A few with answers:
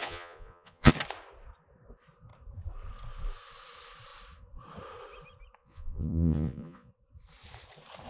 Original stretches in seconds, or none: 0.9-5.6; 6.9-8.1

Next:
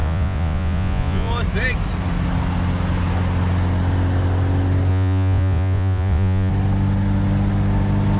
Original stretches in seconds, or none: 1.3-4.9; 6.5-8.2

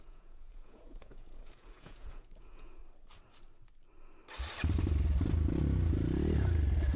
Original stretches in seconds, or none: 2.8-7.0

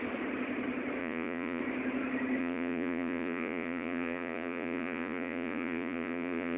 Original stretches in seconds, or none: 0.0-1.0; 1.6-2.4

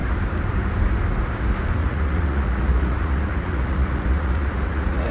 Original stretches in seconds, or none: 0.0-1.8

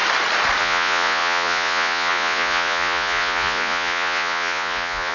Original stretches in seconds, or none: 0.0-0.6

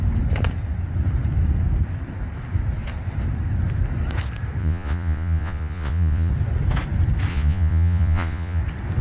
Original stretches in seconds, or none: 0.0-4.6; 6.3-7.3; 8.6-9.0